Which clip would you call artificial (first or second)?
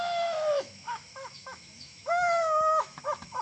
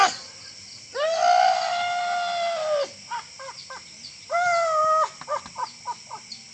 first